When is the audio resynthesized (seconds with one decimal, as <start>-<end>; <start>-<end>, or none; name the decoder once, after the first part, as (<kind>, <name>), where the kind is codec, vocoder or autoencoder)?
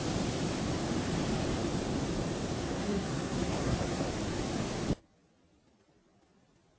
2.6-4.1 (codec, SNAC)